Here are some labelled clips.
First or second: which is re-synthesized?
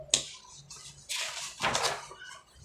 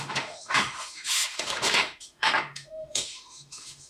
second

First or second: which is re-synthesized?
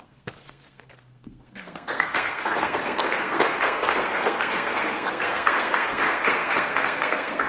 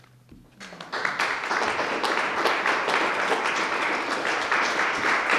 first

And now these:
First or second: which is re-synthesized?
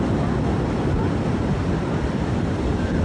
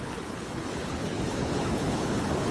second